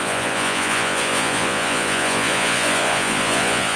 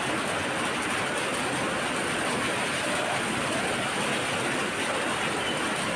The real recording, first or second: second